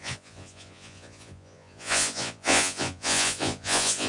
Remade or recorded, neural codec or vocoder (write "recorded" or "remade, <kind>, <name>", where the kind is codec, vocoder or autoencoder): remade, vocoder, Vocos